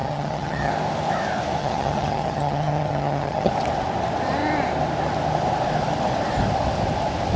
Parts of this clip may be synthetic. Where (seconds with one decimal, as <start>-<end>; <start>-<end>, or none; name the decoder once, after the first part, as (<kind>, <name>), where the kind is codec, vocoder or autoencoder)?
0.0-0.7 (vocoder, HiFi-GAN); 1.6-3.5